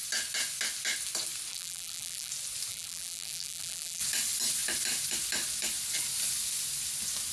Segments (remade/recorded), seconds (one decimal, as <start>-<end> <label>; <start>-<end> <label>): 0.0-1.5 recorded; 1.5-2.3 remade; 2.3-2.7 recorded; 2.7-4.0 remade; 4.0-7.3 recorded